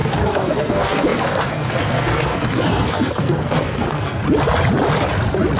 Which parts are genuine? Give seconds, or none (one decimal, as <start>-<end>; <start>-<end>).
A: 4.2-5.6